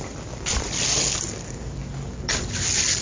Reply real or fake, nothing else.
real